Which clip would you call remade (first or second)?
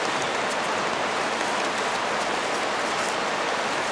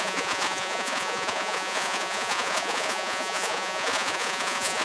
second